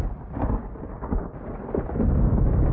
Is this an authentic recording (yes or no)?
no